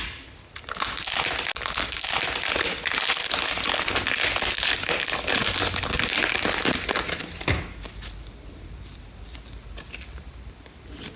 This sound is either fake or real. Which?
real